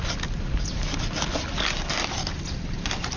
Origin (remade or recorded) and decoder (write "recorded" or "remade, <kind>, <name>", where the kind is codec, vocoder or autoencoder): recorded